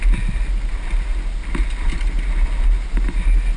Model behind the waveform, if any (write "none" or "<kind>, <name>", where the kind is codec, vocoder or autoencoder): none